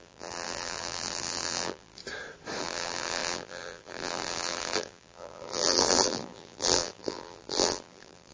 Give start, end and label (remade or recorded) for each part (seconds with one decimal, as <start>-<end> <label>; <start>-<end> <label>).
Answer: 0.0-2.0 remade; 2.0-2.6 recorded; 2.6-8.3 remade